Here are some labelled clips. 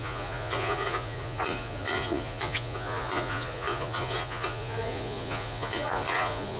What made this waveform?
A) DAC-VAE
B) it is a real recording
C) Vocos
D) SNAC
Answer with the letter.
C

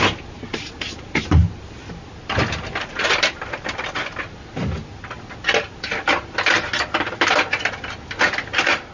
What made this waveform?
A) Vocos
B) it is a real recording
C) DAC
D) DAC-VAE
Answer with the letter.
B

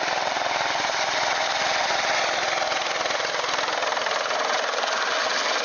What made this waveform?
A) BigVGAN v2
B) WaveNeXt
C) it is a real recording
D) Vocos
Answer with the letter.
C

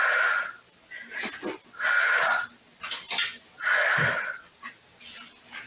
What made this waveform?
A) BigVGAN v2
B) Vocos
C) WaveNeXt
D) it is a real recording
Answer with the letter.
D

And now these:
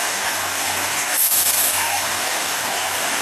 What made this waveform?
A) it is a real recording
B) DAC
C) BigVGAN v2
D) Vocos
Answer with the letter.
B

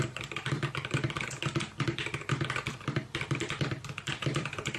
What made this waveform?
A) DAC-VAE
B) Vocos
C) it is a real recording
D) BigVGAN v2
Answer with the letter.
D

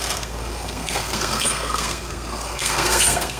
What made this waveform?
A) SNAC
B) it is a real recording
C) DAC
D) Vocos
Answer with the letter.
A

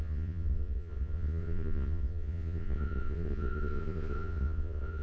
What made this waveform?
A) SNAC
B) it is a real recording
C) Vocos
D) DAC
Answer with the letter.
C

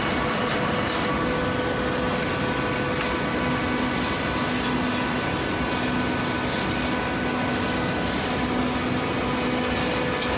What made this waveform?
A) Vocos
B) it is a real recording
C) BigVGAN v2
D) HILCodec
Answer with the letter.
B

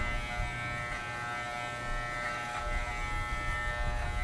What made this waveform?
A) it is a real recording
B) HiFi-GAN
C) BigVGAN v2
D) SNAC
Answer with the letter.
A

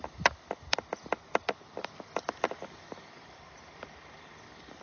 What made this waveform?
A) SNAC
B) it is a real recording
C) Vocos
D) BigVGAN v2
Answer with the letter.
B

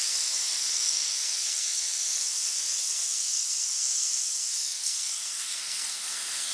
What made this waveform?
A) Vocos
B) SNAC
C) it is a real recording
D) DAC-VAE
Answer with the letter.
B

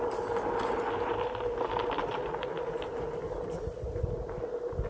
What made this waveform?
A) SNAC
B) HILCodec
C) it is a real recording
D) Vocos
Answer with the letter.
C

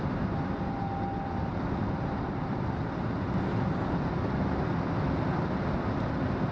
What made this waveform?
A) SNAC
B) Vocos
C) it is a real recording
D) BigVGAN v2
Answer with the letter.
C